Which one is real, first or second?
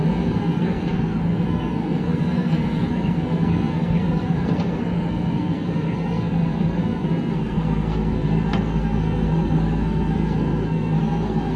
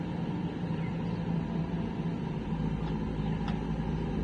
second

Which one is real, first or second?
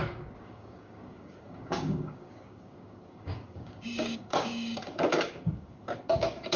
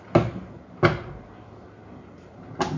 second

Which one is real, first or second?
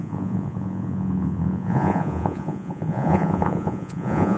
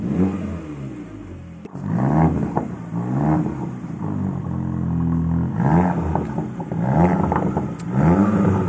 second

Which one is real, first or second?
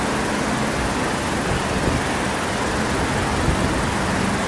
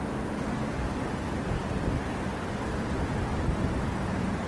first